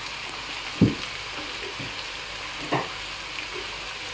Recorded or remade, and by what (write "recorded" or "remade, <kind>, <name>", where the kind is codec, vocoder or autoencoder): recorded